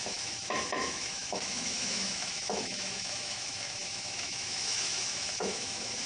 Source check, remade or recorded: remade